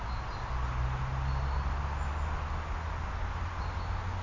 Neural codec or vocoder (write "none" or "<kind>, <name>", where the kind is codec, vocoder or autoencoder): none